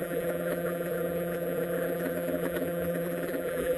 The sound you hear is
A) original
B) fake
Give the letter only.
B